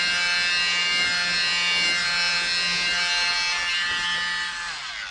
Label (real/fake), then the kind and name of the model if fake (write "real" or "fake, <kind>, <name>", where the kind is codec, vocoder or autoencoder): real